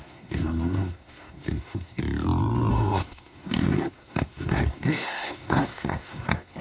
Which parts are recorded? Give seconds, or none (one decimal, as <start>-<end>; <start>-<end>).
2.0-2.7